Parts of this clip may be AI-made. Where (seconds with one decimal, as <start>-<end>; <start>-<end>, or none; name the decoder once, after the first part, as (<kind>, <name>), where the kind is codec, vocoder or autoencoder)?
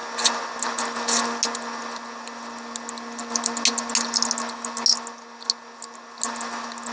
none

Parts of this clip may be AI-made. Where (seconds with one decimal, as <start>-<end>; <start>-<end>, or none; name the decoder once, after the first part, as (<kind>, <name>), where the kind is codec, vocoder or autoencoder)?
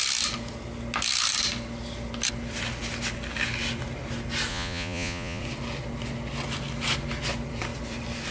4.5-5.4 (vocoder, Vocos)